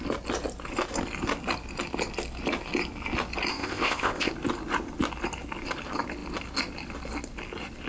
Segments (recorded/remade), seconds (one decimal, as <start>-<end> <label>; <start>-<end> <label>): 0.0-3.5 recorded; 3.5-4.3 remade; 4.3-7.9 recorded